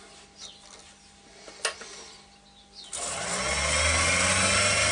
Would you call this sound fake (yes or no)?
no